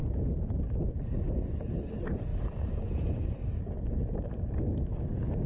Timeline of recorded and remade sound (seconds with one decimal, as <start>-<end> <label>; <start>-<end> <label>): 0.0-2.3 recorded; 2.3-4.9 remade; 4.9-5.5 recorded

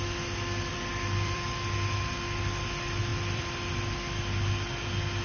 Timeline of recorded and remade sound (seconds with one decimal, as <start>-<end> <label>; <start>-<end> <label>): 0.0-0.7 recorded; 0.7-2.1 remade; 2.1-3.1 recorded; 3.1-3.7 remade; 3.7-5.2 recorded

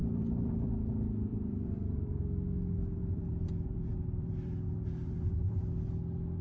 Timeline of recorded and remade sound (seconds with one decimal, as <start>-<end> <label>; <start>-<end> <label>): 0.0-0.7 remade; 0.7-1.3 recorded; 1.3-2.2 remade; 2.2-3.0 recorded; 3.0-5.6 remade; 5.6-6.4 recorded